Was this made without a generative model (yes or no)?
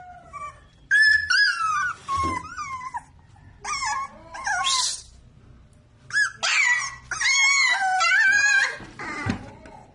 yes